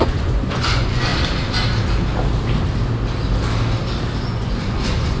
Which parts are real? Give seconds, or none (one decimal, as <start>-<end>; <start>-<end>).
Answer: 1.1-4.2